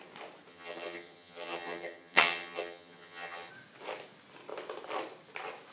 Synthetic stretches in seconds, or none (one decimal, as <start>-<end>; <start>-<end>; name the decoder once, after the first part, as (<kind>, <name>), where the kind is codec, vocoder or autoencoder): 0.5-3.5 (vocoder, HiFi-GAN)